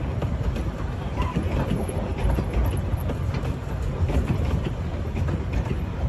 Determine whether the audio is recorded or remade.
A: remade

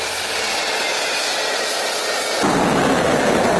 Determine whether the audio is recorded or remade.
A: recorded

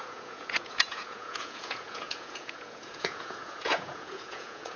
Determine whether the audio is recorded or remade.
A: remade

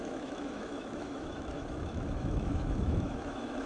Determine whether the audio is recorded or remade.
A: remade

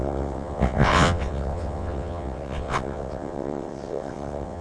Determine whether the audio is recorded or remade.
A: remade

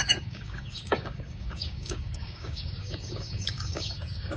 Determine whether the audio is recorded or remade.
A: remade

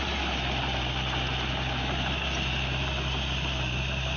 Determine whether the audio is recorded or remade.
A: recorded